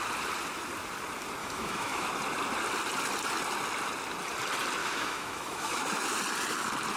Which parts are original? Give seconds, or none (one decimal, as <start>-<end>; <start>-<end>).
0.0-1.4; 2.1-4.8; 5.8-7.0